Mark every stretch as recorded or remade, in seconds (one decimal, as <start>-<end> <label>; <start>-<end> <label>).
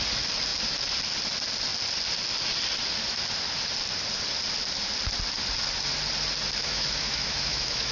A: 0.0-6.6 recorded; 6.6-7.9 remade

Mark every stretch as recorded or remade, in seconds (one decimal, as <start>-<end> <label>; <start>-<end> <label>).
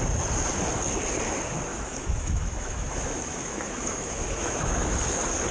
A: 0.0-1.7 recorded; 1.7-5.0 remade; 5.0-5.5 recorded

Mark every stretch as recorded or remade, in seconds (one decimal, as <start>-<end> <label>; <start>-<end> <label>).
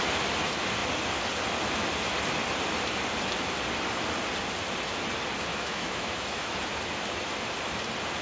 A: 0.0-5.5 recorded; 5.5-6.5 remade; 6.5-8.2 recorded